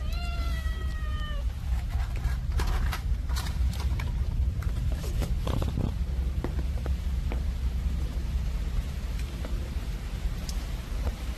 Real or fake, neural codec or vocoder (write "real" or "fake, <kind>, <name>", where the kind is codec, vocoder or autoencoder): fake, vocoder, BigVGAN v2